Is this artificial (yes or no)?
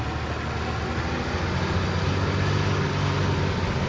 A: no